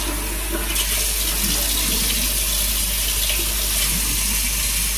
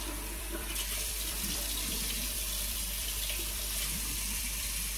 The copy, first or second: second